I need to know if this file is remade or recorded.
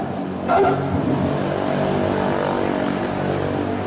recorded